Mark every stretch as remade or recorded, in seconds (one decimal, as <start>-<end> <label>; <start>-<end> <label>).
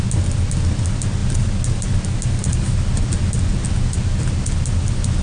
0.0-5.2 recorded